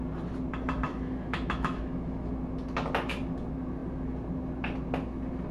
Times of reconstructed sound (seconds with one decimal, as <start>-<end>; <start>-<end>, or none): 0.9-2.3

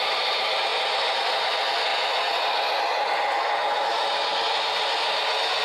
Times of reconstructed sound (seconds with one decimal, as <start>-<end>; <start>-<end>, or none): none

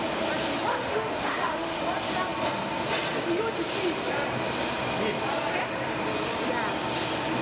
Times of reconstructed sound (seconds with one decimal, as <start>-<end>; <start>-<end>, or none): 0.7-1.8

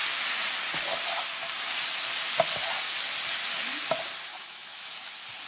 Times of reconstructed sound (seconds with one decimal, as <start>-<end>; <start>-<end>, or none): 4.3-4.9

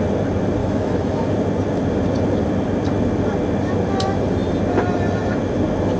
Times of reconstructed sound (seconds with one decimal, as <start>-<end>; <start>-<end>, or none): 0.6-1.2

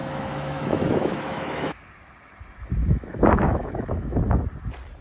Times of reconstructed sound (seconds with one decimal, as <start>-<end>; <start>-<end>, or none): 0.0-1.8; 2.8-4.2

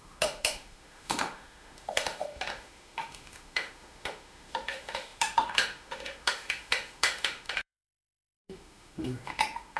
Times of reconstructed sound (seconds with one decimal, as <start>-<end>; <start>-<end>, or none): 0.0-9.8